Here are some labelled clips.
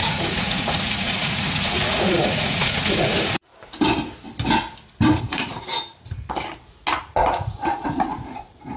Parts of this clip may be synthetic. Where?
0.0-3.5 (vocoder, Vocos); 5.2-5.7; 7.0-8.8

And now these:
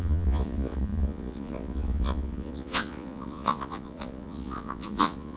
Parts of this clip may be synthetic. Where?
0.0-5.4 (vocoder, Vocos)

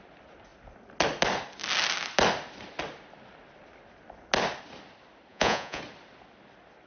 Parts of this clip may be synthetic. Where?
5.3-5.8 (vocoder, Vocos)

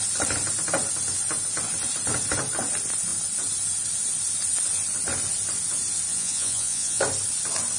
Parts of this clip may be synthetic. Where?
6.1-7.0 (vocoder, Vocos)

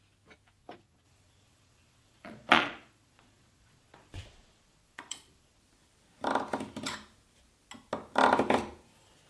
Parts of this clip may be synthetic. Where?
0.6-5.6 (vocoder, Vocos)

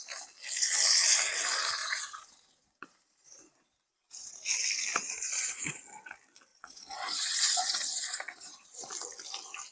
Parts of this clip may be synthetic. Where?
1.8-4.4 (vocoder, Vocos); 4.9-5.8; 6.5-8.9